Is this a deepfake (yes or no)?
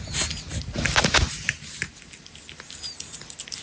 no